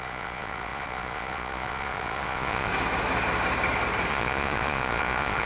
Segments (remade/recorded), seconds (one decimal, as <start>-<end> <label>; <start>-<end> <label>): 0.0-2.7 remade; 2.7-4.1 recorded; 4.1-5.5 remade